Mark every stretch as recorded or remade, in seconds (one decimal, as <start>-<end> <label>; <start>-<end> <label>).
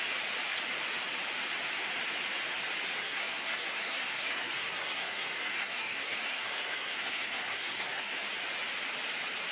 0.0-3.0 recorded; 3.0-8.1 remade; 8.1-9.5 recorded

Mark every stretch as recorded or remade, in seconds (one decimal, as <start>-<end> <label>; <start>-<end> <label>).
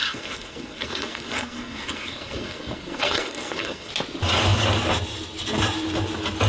0.0-3.9 remade; 3.9-6.5 recorded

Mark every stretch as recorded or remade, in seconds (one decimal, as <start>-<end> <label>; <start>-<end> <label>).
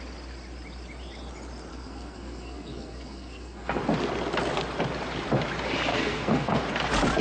0.0-1.7 recorded; 1.7-3.8 remade; 3.8-5.9 recorded; 5.9-6.6 remade; 6.6-7.2 recorded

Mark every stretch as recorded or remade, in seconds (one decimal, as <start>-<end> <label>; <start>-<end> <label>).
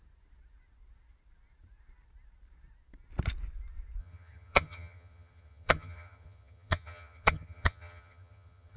0.0-4.0 recorded; 4.0-8.8 remade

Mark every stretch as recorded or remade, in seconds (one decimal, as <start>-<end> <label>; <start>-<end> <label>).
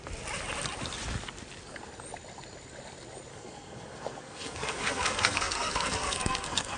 0.0-3.3 recorded; 3.3-6.8 remade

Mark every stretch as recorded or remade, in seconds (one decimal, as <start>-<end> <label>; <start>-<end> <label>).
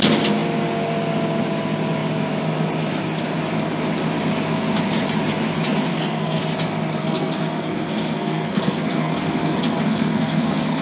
0.0-5.9 recorded; 5.9-6.4 remade; 6.4-7.0 recorded; 7.0-10.8 remade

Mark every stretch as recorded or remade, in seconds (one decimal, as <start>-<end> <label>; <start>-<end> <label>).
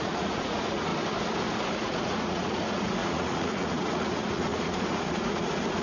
0.0-0.9 remade; 0.9-1.7 recorded; 1.7-5.8 remade